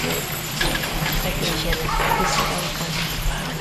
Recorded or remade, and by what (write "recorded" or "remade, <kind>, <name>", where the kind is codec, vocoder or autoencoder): recorded